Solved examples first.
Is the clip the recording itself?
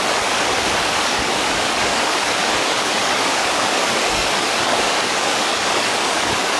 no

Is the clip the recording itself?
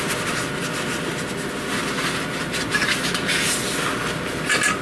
yes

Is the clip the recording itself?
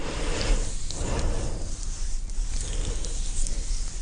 yes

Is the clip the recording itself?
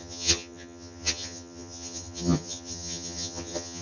no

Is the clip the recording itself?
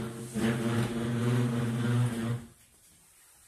no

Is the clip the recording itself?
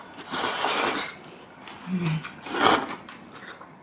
yes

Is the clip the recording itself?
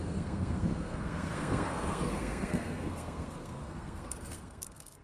no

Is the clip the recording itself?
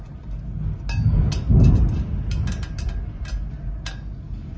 yes